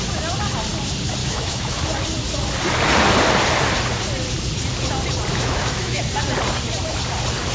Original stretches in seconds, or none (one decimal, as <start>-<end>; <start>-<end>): 0.0-1.2; 1.8-5.3; 6.0-7.5